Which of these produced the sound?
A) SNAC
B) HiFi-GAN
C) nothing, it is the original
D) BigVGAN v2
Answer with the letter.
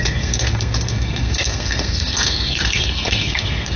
A